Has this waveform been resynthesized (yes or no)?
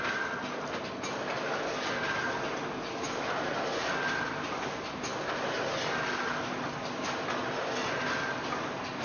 no